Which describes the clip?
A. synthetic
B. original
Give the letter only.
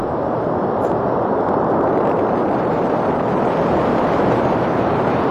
A